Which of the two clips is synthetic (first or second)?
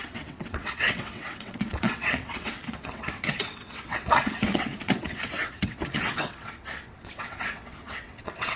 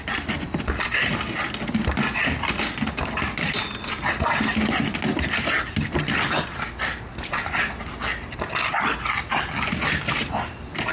first